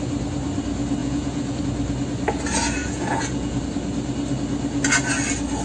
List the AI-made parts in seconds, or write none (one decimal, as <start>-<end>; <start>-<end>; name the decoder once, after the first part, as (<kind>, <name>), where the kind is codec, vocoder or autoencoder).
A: 1.0-1.6 (vocoder, Vocos); 2.8-3.6